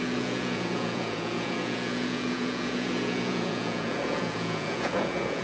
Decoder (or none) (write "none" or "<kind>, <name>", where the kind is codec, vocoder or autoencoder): vocoder, Vocos